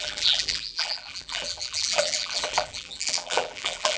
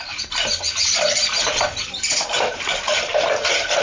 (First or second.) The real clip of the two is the second